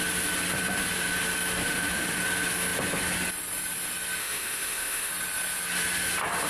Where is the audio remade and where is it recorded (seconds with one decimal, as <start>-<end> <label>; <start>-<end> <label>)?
0.0-1.6 recorded; 1.6-2.2 remade; 2.2-4.2 recorded; 4.2-5.1 remade; 5.1-6.5 recorded

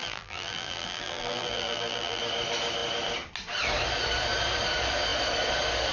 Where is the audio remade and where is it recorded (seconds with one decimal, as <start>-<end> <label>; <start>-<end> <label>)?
0.0-2.2 remade; 2.2-5.9 recorded

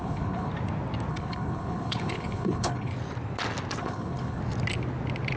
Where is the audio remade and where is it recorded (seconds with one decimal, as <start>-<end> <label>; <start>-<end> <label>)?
0.0-0.5 remade; 0.5-1.1 recorded; 1.1-2.9 remade; 2.9-3.8 recorded; 3.8-4.4 remade; 4.4-5.4 recorded